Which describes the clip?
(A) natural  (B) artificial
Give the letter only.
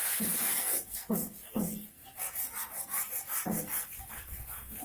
B